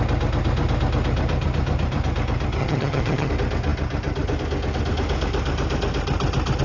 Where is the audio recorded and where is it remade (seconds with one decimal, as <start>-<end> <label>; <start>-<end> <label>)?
0.0-2.6 recorded; 2.6-3.3 remade; 3.3-6.6 recorded